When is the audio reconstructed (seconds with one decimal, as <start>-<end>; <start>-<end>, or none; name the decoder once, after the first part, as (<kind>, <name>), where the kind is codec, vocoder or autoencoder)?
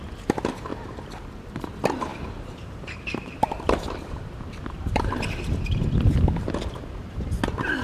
0.7-1.7 (vocoder, BigVGAN v2); 2.1-6.8